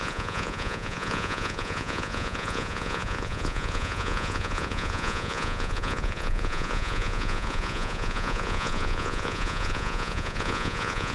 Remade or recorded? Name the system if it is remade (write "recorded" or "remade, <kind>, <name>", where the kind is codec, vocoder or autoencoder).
remade, vocoder, Vocos